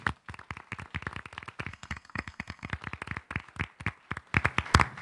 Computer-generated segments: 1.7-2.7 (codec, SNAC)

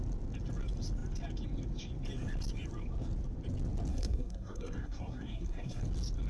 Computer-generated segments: 3.9-5.8 (codec, SNAC)

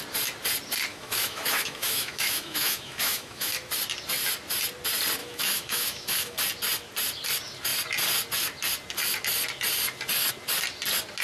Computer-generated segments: 0.9-3.5 (autoencoder, DAC-VAE); 5.2-6.4

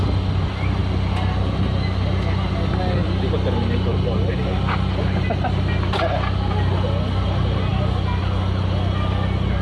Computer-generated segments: none

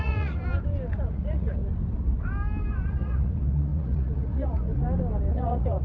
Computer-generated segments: 0.0-0.4 (vocoder, Vocos); 1.1-1.6; 2.9-4.7; 5.3-5.8

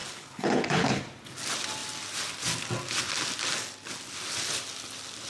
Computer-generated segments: 0.0-1.0 (codec, HILCodec)

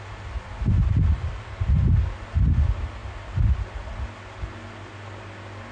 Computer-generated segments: none